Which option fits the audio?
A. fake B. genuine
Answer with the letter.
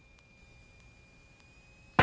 B